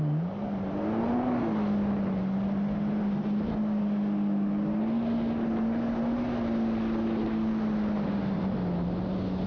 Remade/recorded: recorded